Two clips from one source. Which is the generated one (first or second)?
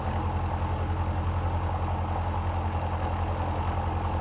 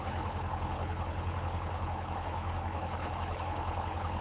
second